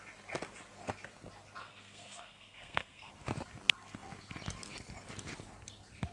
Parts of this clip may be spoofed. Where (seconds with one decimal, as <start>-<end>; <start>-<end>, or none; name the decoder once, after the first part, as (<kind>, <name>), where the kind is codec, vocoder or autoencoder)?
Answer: 1.6-3.1 (codec, SNAC)